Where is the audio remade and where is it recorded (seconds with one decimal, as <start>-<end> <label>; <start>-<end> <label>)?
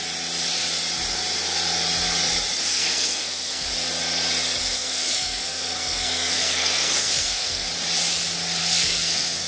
0.0-2.7 recorded; 2.7-3.7 remade; 3.7-4.6 recorded; 4.6-7.7 remade; 7.7-8.6 recorded; 8.6-9.5 remade